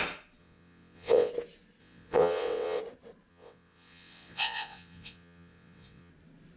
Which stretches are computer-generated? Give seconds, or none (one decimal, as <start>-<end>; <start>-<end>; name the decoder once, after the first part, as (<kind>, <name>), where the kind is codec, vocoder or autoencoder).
0.4-1.3 (vocoder, WaveNeXt); 1.8-2.8; 3.3-6.1